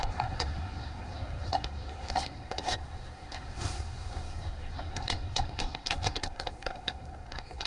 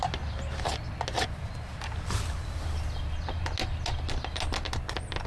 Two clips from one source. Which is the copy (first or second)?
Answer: first